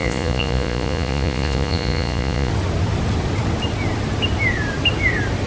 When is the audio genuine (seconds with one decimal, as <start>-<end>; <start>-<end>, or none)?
2.5-5.5